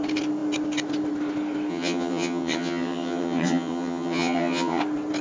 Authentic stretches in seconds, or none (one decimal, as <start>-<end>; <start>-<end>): 0.0-1.7; 4.8-5.2